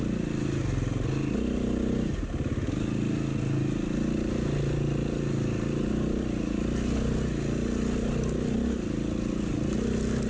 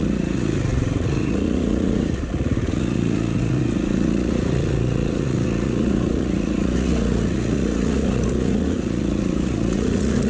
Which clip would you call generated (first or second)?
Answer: second